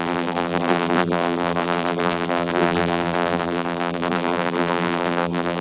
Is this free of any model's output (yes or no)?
no